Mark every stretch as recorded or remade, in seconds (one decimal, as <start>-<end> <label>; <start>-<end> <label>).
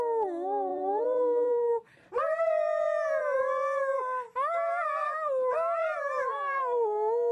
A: 0.0-0.7 recorded; 0.7-3.6 remade; 3.6-5.8 recorded; 5.8-6.6 remade; 6.6-7.3 recorded